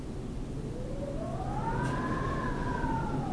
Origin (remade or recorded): recorded